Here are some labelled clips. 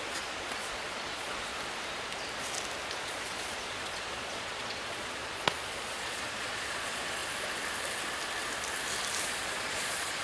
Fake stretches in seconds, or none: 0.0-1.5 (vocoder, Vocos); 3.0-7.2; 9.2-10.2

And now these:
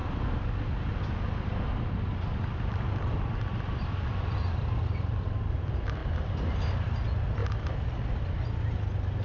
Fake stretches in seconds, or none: 1.0-3.5 (vocoder, BigVGAN v2); 4.1-6.0; 6.8-7.4

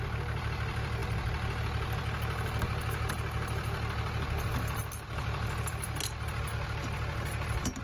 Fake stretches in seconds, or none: none

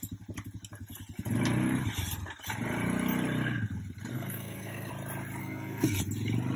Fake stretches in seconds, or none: 4.1-4.9 (codec, SNAC); 5.4-6.0

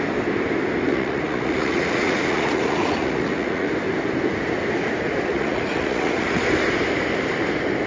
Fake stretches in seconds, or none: 0.9-3.7 (vocoder, Vocos); 5.3-6.4